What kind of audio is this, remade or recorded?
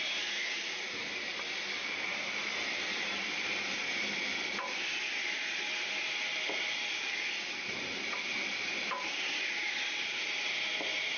recorded